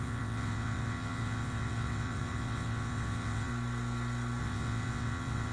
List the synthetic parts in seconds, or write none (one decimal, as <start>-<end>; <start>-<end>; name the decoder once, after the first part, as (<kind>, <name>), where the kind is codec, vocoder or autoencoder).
0.0-3.5 (vocoder, WaveNeXt); 4.4-5.5